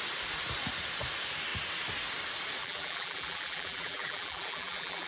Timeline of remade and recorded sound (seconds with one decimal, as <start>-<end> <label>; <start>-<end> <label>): 0.0-2.6 recorded; 2.6-5.1 remade